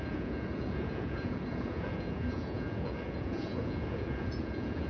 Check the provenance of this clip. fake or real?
fake